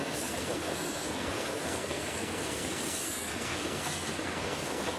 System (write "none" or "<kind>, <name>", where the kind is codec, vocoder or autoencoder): codec, SNAC